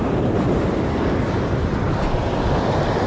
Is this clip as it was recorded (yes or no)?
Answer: yes